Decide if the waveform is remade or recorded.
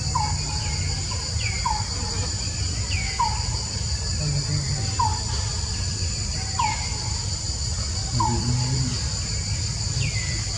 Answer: recorded